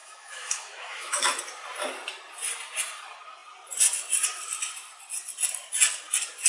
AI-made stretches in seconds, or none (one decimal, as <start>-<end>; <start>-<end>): 0.0-1.4